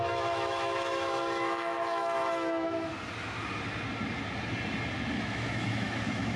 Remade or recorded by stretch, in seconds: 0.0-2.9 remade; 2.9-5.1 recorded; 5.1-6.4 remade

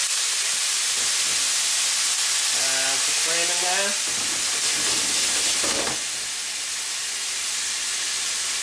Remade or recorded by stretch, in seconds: 0.0-2.1 remade; 2.1-3.9 recorded; 3.9-4.6 remade; 4.6-8.6 recorded

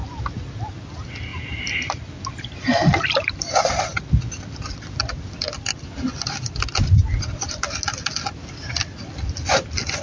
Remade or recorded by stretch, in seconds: 0.0-0.7 remade; 0.7-1.3 recorded; 1.3-2.4 remade; 2.4-3.9 recorded; 3.9-5.0 remade; 5.0-10.0 recorded

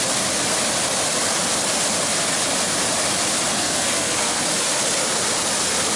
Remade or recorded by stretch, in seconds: 0.0-3.5 recorded; 3.5-4.4 remade; 4.4-6.0 recorded

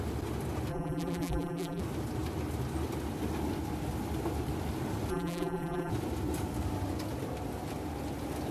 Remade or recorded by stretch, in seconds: 0.0-0.7 recorded; 0.7-1.8 remade; 1.8-5.1 recorded; 5.1-5.9 remade; 5.9-8.5 recorded

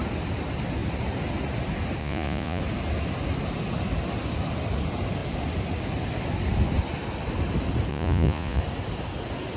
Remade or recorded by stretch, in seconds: 0.0-2.0 recorded; 2.0-2.6 remade; 2.6-7.9 recorded; 7.9-8.6 remade; 8.6-9.6 recorded

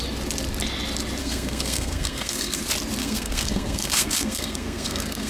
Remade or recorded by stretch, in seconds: 0.0-1.2 recorded; 1.2-2.6 remade; 2.6-3.0 recorded; 3.0-5.3 remade

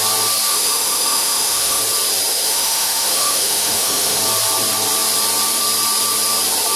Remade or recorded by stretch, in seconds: 0.0-0.5 recorded; 0.5-1.8 remade; 1.8-2.3 recorded; 2.3-4.2 remade; 4.2-6.8 recorded